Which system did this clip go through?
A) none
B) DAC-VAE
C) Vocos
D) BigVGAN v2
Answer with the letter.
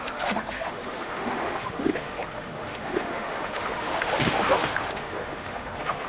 B